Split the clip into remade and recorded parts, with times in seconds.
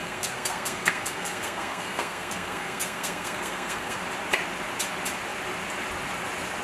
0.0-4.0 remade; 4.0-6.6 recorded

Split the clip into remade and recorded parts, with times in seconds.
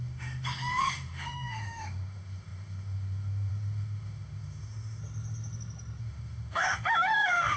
0.0-5.0 remade; 5.0-6.0 recorded; 6.0-7.6 remade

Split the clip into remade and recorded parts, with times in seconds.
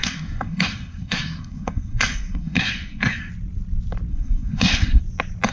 0.0-3.3 remade; 3.3-4.1 recorded; 4.1-5.0 remade; 5.0-5.5 recorded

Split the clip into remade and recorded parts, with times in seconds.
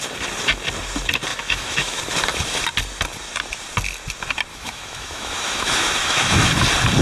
0.0-1.3 recorded; 1.3-2.0 remade; 2.0-4.5 recorded; 4.5-6.6 remade; 6.6-7.0 recorded